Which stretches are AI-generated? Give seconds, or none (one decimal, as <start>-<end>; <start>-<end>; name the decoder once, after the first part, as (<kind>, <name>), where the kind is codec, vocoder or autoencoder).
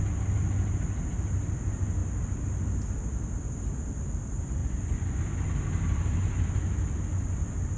4.6-5.2 (vocoder, Vocos)